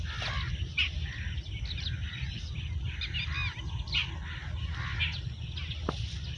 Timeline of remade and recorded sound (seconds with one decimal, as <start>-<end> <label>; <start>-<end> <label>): 0.0-6.4 recorded